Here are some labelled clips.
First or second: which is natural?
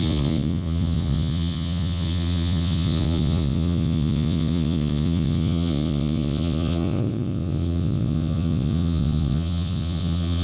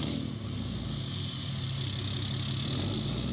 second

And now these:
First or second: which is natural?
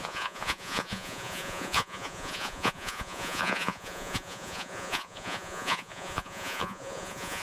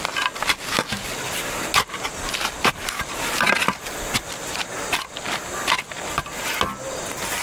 second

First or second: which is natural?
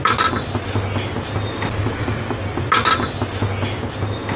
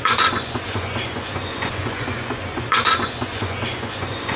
first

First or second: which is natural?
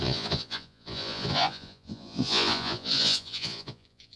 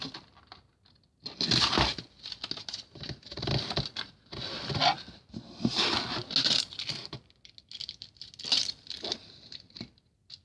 second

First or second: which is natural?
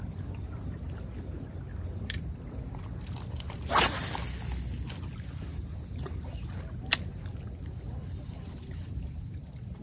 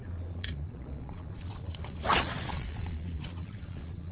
first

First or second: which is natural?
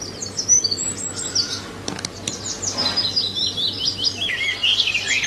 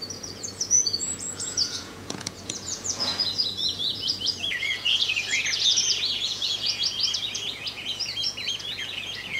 first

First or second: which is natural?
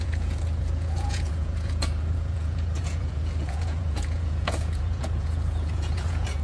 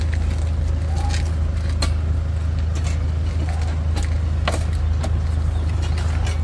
second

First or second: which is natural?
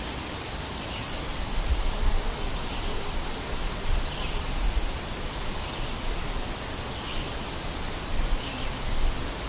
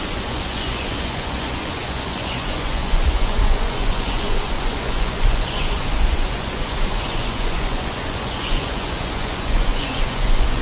first